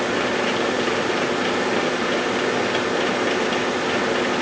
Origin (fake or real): real